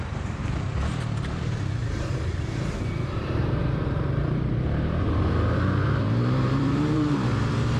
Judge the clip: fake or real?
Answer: fake